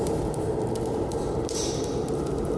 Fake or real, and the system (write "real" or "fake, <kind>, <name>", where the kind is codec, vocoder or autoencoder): real